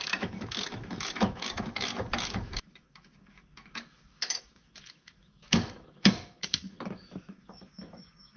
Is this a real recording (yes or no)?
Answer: no